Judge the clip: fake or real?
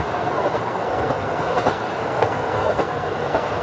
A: fake